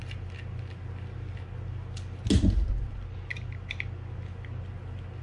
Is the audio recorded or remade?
recorded